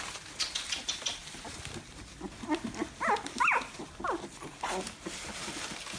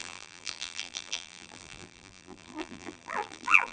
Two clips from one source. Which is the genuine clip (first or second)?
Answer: first